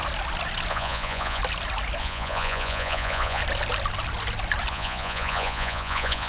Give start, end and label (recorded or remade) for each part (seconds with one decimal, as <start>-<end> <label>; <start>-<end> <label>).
0.0-0.7 recorded; 0.7-1.4 remade; 1.4-2.0 recorded; 2.0-3.4 remade; 3.4-4.7 recorded; 4.7-6.3 remade